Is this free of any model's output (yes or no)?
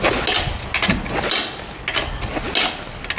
yes